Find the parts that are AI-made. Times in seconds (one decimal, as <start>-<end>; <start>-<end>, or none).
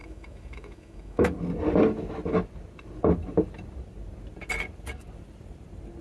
0.0-1.3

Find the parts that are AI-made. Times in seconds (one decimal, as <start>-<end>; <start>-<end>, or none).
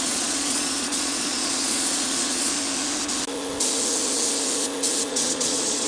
0.0-2.5; 5.1-5.9